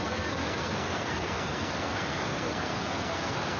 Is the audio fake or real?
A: fake